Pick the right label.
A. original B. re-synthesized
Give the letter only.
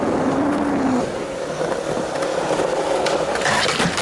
A